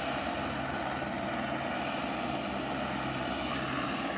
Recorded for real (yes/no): yes